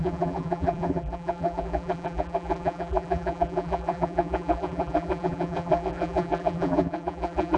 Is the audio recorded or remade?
remade